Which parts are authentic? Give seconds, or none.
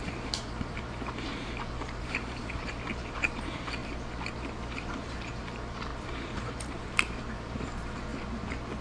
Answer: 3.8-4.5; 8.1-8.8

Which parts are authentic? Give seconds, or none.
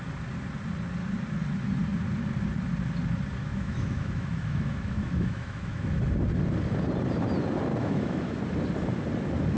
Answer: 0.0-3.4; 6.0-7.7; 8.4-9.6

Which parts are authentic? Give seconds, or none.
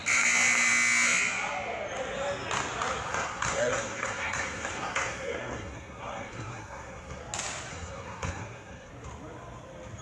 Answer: 0.0-3.1; 7.2-7.7; 8.9-10.0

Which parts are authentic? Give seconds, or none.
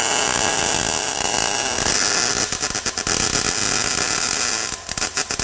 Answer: 0.0-5.4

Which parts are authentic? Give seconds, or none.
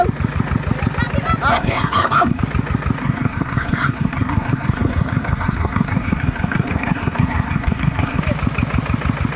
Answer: 0.0-1.5; 2.4-3.0; 8.2-9.4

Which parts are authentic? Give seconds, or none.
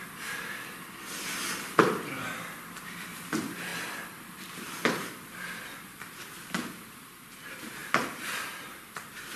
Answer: 7.8-8.4